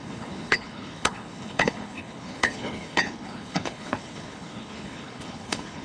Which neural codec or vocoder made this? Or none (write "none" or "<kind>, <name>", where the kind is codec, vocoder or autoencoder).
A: codec, HILCodec